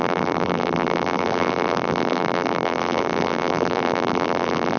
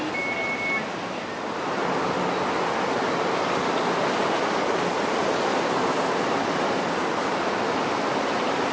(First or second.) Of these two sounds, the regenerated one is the first